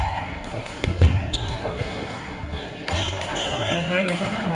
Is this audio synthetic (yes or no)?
yes